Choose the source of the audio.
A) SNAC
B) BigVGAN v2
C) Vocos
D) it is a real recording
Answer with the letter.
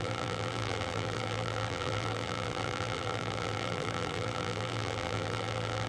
B